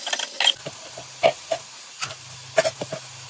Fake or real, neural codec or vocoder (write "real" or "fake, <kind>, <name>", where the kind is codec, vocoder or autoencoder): real